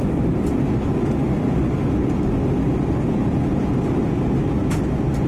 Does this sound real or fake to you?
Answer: real